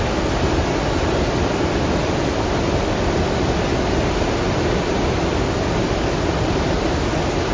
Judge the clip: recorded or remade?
recorded